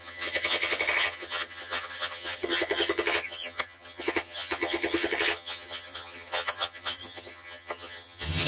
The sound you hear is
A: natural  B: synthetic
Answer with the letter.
B